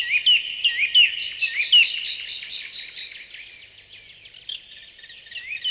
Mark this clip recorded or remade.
recorded